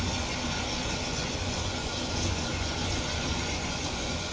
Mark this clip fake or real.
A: fake